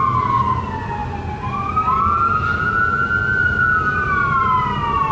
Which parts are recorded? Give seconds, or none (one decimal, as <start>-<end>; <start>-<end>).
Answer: 0.0-5.1

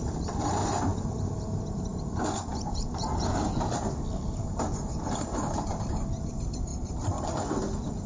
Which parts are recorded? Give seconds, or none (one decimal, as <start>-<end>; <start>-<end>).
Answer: none

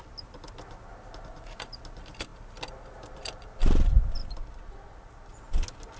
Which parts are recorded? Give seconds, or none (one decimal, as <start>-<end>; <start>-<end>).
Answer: 0.0-6.0

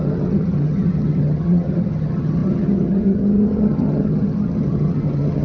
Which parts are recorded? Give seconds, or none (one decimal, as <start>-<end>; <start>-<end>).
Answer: none